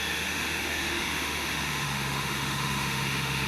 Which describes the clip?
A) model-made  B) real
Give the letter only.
A